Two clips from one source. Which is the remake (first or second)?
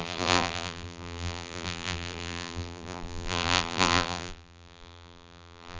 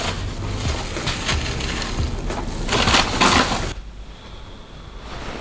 first